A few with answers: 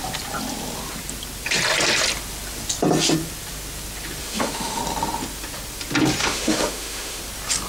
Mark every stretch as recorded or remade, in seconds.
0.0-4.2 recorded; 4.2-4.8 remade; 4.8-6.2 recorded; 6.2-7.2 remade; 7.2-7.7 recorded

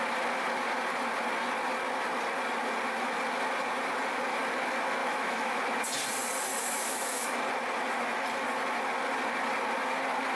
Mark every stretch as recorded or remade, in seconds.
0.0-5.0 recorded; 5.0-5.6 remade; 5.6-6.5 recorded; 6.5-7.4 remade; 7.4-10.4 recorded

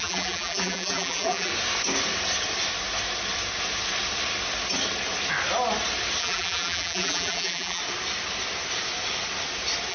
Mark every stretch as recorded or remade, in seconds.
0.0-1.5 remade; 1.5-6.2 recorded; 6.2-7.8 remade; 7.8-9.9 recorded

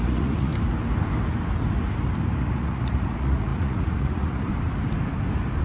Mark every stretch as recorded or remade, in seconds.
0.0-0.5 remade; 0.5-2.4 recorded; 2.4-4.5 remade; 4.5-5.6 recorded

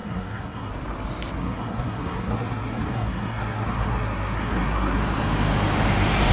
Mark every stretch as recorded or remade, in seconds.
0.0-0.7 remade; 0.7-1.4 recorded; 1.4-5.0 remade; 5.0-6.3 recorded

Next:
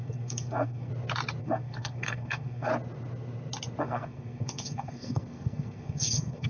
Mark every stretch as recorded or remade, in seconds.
0.0-0.9 remade; 0.9-1.4 recorded; 1.4-2.7 remade; 2.7-3.8 recorded; 3.8-6.5 remade

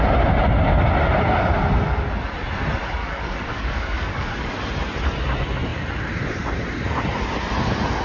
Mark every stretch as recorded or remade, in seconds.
0.0-3.0 recorded; 3.0-4.5 remade; 4.5-8.0 recorded